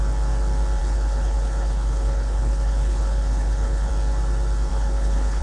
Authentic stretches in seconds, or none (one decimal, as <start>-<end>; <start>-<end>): 0.0-0.8; 3.9-4.7